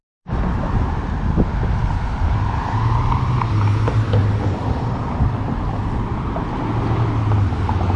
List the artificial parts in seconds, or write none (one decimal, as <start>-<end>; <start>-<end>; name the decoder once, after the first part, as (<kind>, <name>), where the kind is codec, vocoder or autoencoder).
4.2-5.3 (vocoder, BigVGAN v2)